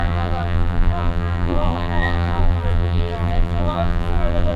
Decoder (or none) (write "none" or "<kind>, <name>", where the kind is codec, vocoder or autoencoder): vocoder, BigVGAN v2